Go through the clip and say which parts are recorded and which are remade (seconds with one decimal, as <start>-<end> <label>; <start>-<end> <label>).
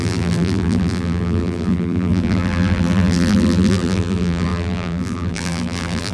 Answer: 0.0-6.1 remade